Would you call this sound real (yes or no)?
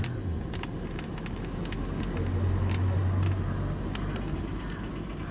yes